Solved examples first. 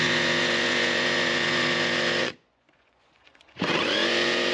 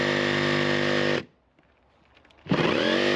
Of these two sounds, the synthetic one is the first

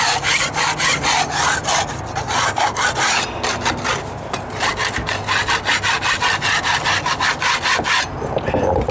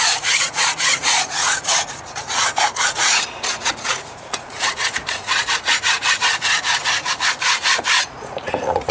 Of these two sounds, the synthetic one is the second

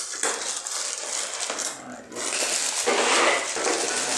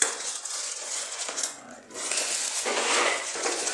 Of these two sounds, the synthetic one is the second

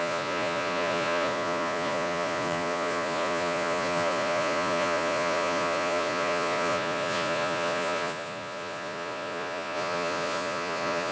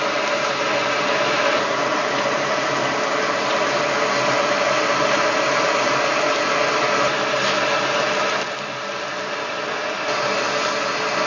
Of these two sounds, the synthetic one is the first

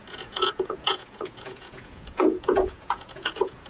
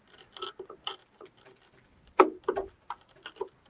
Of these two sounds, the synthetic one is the first